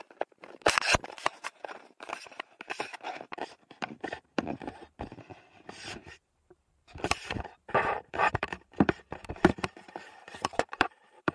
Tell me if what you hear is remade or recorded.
remade